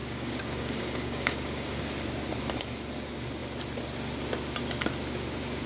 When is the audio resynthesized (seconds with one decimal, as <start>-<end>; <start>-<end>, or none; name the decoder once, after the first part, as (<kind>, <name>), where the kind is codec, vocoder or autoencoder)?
0.0-1.8 (codec, DAC)